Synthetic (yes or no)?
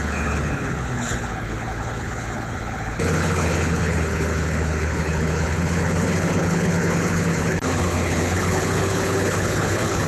yes